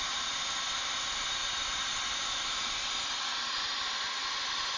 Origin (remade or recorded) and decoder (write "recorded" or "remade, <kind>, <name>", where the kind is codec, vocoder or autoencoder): recorded